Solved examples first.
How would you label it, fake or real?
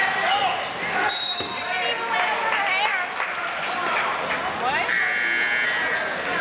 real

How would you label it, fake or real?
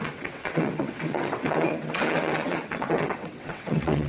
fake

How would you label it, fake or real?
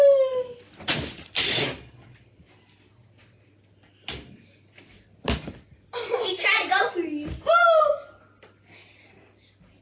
real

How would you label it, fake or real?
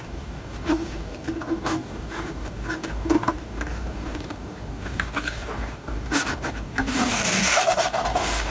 fake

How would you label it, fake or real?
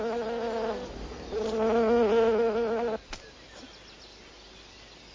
real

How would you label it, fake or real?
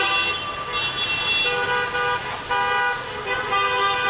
real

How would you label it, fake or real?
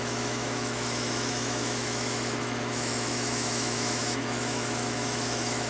fake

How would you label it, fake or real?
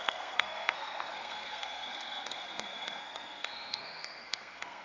fake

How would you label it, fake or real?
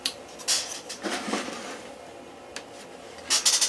real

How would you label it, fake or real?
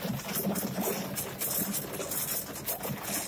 real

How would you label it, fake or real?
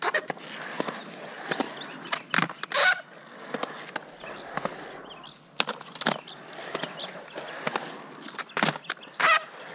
real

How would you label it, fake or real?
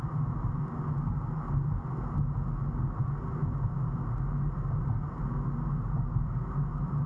real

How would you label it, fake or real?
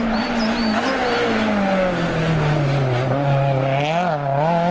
real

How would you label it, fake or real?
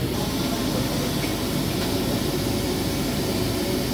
real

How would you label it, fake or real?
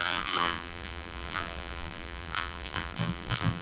fake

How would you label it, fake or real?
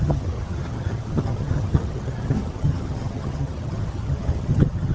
fake